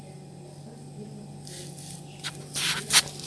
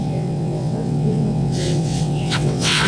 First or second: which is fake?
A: second